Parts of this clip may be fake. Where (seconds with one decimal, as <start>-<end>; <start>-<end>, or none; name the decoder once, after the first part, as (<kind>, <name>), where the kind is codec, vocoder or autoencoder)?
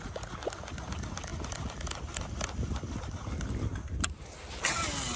1.3-4.4 (vocoder, BigVGAN v2)